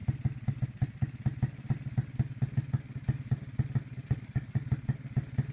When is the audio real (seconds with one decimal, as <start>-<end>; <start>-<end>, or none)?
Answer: 0.0-5.5